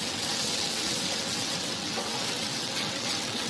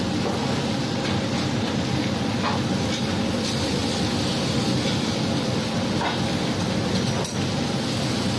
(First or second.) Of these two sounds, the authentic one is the second